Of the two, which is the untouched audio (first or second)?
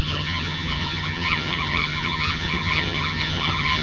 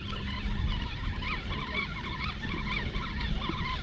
second